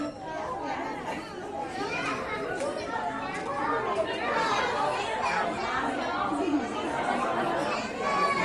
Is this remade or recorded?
recorded